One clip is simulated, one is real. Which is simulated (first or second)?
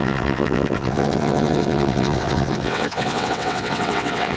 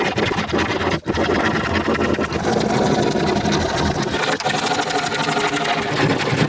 first